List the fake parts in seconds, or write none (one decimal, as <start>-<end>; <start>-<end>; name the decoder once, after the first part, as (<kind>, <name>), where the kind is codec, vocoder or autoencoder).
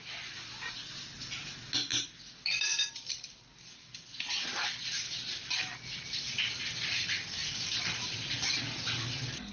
1.9-3.2 (vocoder, BigVGAN v2); 7.4-8.3